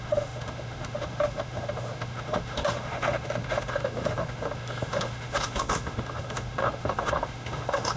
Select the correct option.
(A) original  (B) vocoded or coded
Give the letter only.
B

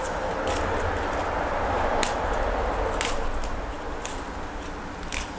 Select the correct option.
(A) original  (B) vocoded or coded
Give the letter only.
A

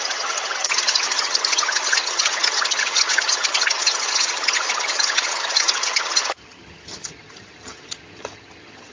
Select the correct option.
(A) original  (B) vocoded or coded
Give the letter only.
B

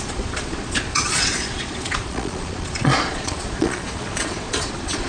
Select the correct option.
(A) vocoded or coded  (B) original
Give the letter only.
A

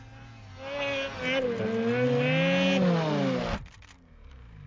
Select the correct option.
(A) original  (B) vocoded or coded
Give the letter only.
A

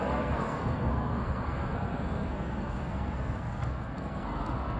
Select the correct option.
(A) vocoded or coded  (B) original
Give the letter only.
A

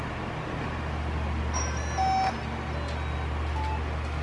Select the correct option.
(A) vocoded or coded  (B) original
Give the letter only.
B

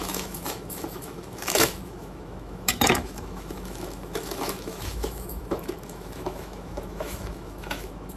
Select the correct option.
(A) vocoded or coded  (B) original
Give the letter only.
A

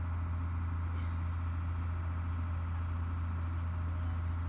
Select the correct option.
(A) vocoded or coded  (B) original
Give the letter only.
B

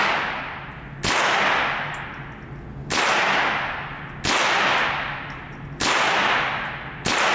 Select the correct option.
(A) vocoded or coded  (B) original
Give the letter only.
B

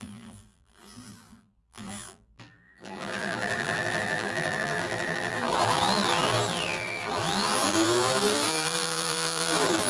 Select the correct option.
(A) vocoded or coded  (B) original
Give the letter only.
A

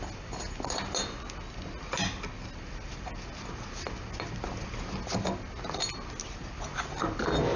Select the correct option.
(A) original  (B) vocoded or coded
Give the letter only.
A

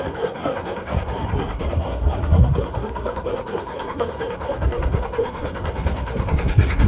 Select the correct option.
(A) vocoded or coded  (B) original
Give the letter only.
A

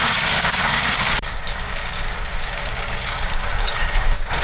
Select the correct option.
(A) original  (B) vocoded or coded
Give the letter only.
B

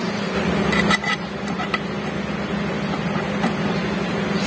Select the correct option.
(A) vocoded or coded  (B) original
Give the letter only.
B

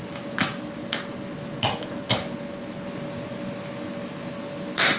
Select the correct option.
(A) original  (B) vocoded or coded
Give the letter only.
A